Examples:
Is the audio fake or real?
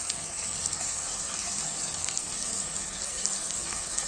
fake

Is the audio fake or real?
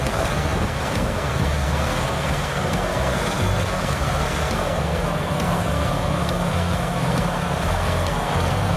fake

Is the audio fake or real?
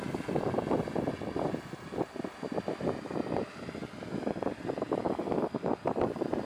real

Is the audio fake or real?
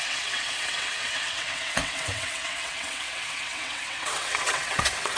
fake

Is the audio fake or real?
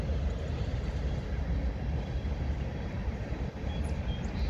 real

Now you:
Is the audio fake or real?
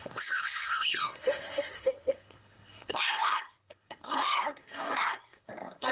fake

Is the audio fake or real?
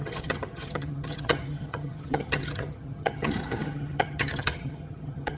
fake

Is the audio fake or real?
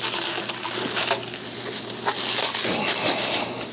real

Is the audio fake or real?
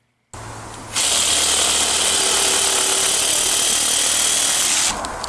real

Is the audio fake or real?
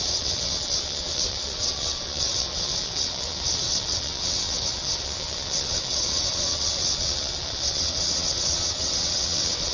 fake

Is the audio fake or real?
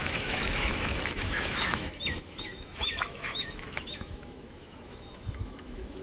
fake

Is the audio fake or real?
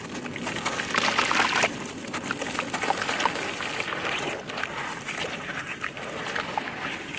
real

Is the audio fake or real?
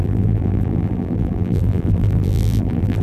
fake